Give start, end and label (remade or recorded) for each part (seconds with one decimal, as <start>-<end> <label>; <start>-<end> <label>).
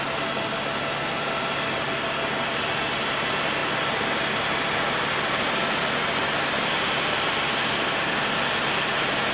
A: 0.0-9.3 recorded